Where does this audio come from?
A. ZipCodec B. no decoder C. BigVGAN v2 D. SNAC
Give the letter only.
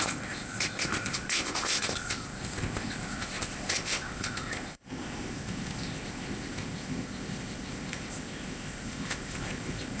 A